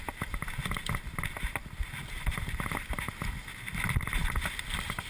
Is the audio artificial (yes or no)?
no